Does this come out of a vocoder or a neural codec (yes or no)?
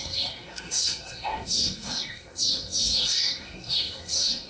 yes